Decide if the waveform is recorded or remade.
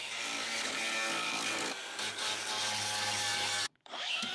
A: remade